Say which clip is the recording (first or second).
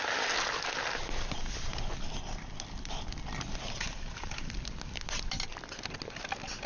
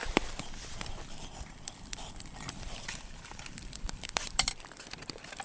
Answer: first